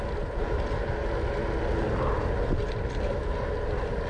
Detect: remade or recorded recorded